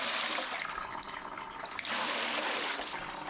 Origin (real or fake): real